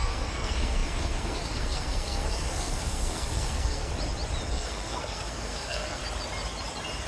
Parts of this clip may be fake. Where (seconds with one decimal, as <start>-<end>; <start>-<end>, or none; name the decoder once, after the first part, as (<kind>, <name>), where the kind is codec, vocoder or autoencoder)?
0.0-3.9 (codec, SNAC); 4.5-6.0